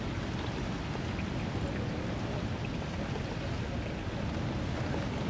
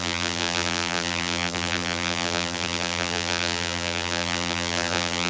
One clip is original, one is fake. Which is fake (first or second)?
second